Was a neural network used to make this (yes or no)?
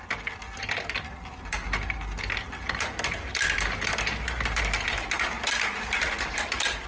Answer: no